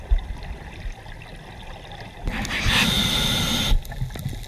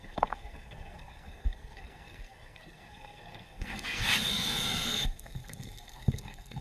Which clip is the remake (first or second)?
second